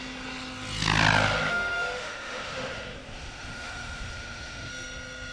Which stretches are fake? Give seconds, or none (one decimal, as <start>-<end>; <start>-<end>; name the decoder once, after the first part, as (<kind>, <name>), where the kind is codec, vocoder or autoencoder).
1.5-4.7 (autoencoder, DAC-VAE)